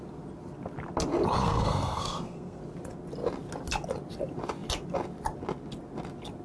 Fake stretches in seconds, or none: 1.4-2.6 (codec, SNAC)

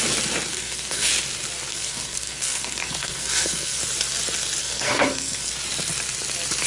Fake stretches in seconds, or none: 0.5-1.1 (codec, SNAC); 1.7-3.8; 4.6-5.5

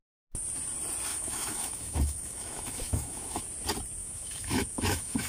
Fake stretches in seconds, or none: 1.1-3.4 (autoencoder, DAC-VAE); 4.0-5.3

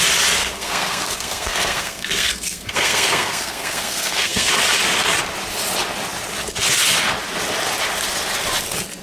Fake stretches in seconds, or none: 0.4-4.5 (codec, SNAC)

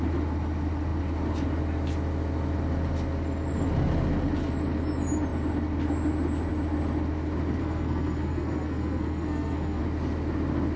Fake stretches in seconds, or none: 7.6-9.8 (codec, SNAC)

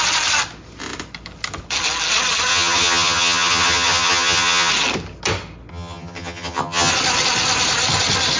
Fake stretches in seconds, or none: 2.5-4.7 (vocoder, HiFi-GAN); 5.7-6.9